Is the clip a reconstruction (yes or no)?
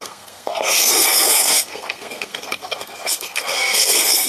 yes